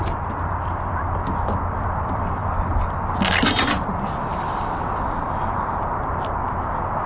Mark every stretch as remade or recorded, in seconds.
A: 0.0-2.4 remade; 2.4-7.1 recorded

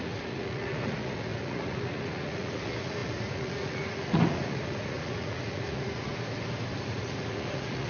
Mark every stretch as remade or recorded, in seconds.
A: 0.0-6.1 remade; 6.1-6.7 recorded; 6.7-7.9 remade

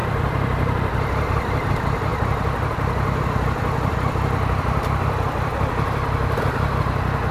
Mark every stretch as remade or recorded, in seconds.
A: 0.0-1.7 remade; 1.7-2.1 recorded; 2.1-6.5 remade; 6.5-7.3 recorded

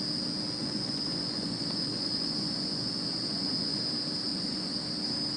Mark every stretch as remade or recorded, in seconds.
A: 0.0-0.6 recorded; 0.6-3.8 remade; 3.8-4.3 recorded; 4.3-4.8 remade; 4.8-5.4 recorded